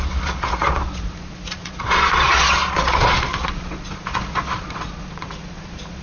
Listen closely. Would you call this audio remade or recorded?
remade